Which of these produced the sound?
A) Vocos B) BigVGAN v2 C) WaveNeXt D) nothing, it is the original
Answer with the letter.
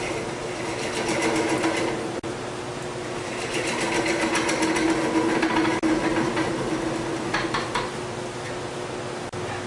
D